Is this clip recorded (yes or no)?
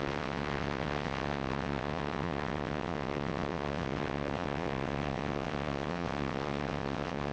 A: no